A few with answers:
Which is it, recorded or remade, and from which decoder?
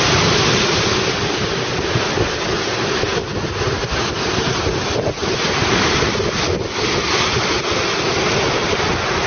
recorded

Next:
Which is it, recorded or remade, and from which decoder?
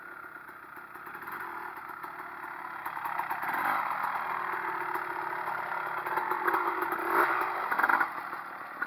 recorded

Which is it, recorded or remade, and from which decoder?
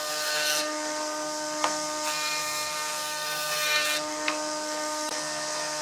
remade, codec, SNAC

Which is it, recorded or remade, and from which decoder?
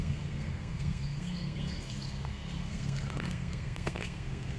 remade, codec, SNAC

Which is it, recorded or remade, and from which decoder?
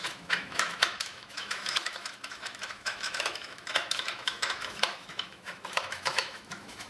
remade, autoencoder, DAC-VAE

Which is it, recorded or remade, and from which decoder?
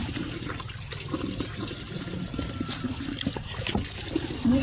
recorded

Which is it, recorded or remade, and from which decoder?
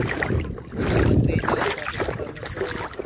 recorded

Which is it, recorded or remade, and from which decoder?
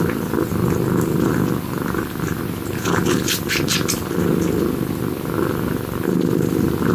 recorded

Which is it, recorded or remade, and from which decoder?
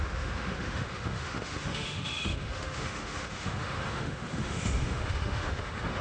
remade, autoencoder, DAC-VAE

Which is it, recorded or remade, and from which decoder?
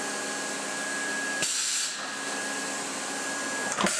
recorded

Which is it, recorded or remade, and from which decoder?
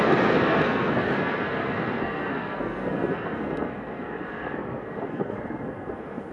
remade, codec, SNAC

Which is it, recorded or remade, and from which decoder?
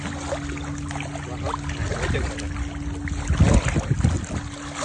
recorded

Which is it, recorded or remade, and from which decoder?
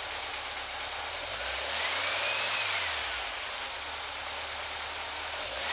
recorded